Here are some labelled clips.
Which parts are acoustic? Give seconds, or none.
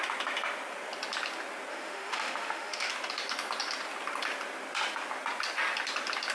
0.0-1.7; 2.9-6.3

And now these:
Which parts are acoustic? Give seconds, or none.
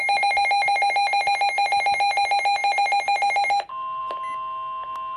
0.0-5.2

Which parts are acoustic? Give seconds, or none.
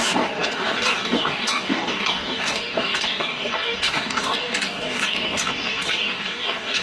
none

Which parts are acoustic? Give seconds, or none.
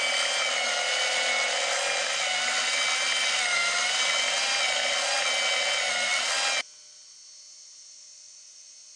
0.0-9.0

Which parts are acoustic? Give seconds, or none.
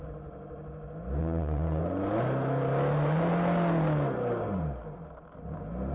0.0-1.2; 1.8-5.9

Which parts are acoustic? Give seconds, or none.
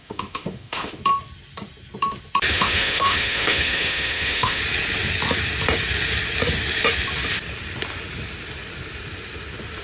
1.0-2.5; 4.6-9.8